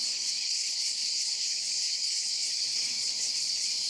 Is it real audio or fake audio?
fake